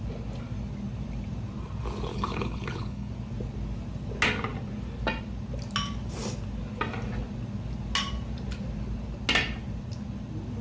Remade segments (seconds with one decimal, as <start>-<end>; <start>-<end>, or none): 2.1-3.1